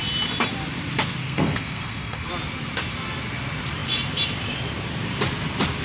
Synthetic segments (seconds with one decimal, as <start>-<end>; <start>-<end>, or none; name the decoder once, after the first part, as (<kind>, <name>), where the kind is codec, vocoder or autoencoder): 1.2-2.3 (codec, SNAC)